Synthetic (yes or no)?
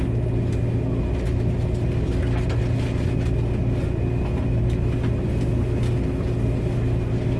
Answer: no